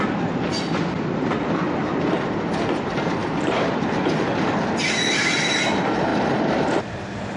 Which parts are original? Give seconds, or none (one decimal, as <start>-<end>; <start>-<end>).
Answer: 0.0-7.4